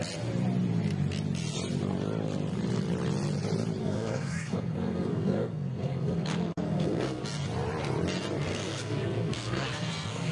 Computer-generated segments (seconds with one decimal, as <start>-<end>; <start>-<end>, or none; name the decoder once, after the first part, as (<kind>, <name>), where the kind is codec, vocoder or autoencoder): 3.8-7.2 (codec, SNAC); 8.5-10.3